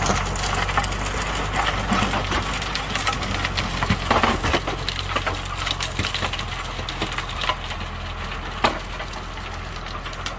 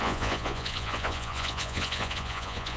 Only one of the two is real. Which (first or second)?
first